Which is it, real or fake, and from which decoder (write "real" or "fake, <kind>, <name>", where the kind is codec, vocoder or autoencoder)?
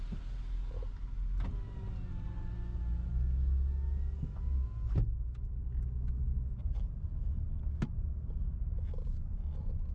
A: real